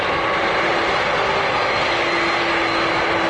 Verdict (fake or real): real